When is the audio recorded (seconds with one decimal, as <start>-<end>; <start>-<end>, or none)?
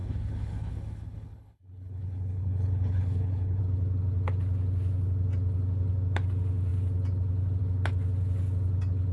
3.6-9.1